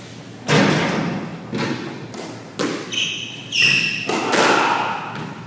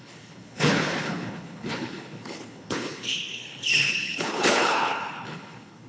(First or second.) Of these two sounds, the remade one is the second